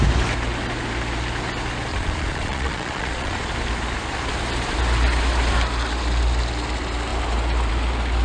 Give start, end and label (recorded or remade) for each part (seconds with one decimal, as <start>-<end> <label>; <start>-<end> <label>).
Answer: 0.0-1.9 recorded; 1.9-3.5 remade; 3.5-8.2 recorded